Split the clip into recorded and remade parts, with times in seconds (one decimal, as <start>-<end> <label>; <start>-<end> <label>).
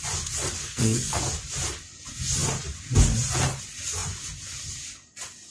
0.0-0.6 recorded; 0.6-1.2 remade; 1.2-5.5 recorded